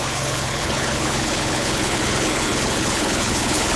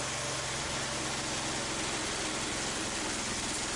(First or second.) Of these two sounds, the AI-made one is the first